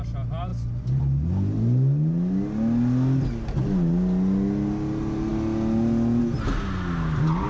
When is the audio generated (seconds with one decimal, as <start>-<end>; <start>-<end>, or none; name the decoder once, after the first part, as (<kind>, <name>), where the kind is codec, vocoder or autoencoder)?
none